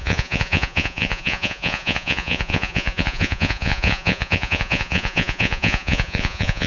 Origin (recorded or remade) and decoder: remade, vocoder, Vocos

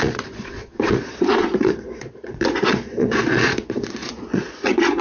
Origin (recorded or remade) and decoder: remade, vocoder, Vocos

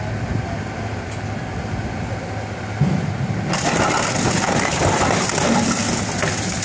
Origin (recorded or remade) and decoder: recorded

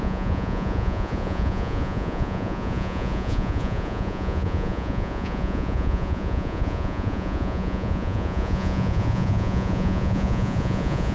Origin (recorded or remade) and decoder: remade, vocoder, Vocos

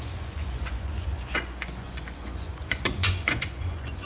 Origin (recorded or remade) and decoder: remade, vocoder, Vocos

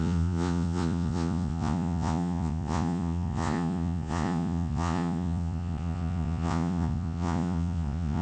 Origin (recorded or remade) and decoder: remade, vocoder, Vocos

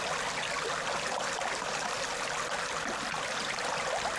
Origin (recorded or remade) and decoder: recorded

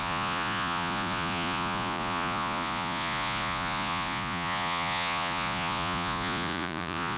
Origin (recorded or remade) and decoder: remade, vocoder, Vocos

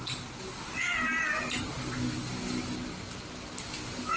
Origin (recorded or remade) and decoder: recorded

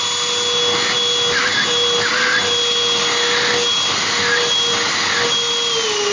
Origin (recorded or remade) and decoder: recorded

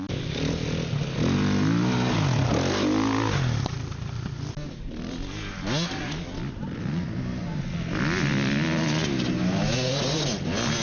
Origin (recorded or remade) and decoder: recorded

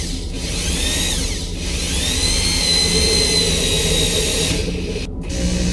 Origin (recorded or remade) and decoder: recorded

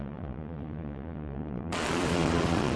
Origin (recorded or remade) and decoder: remade, vocoder, Vocos